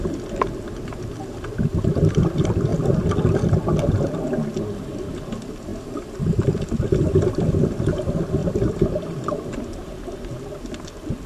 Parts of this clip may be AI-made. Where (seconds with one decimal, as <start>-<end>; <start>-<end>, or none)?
8.4-9.9